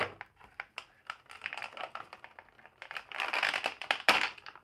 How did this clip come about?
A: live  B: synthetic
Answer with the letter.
A